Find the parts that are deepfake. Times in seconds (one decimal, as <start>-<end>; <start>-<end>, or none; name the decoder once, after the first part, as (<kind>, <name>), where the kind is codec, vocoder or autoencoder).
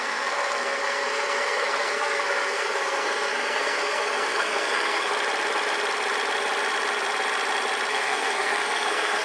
0.0-5.1 (codec, SNAC); 7.9-9.2